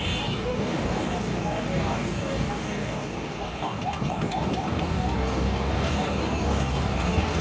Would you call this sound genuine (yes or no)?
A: no